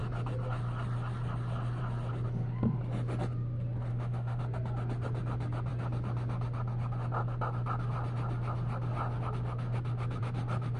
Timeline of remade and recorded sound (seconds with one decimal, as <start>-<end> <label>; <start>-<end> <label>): 0.0-3.9 recorded; 3.9-4.4 remade; 4.4-10.8 recorded